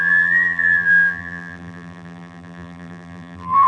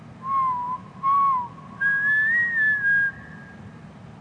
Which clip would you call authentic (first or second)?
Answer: second